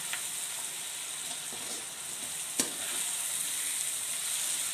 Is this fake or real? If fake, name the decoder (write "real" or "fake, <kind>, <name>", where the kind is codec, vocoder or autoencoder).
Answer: real